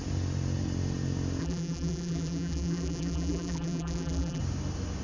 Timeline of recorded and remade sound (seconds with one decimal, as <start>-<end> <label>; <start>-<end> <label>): 0.0-1.4 recorded; 1.4-4.4 remade; 4.4-5.0 recorded